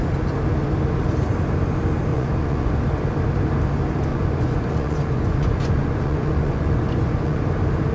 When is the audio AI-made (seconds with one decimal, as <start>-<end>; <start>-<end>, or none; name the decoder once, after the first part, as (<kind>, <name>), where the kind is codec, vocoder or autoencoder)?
2.1-2.8 (vocoder, Vocos); 4.1-7.4